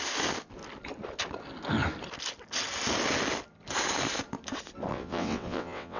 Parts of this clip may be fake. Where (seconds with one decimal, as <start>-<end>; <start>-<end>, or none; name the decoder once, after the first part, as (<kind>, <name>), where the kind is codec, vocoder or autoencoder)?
4.9-6.0 (vocoder, WaveNeXt)